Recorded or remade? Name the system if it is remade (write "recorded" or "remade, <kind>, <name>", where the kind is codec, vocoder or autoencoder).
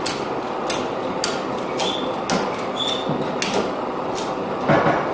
recorded